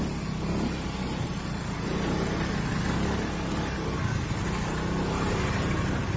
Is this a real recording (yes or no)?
yes